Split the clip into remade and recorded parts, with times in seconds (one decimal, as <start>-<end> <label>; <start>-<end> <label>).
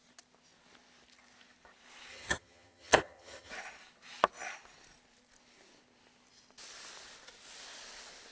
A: 0.0-2.1 recorded; 2.1-3.5 remade; 3.5-8.3 recorded